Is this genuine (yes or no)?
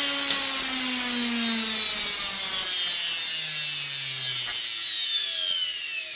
yes